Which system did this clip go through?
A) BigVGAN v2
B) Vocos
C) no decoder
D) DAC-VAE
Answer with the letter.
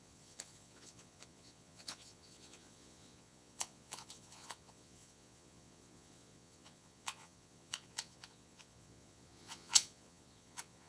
B